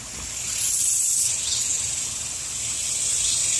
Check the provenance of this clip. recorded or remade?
recorded